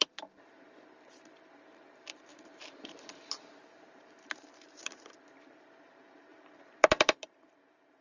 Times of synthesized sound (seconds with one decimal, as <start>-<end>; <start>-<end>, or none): 0.0-8.0